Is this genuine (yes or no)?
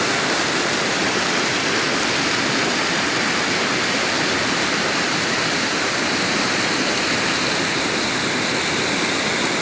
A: yes